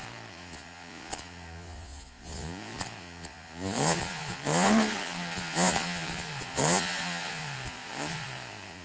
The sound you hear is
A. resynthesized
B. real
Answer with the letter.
A